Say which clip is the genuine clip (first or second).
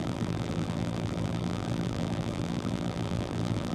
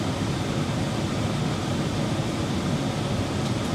second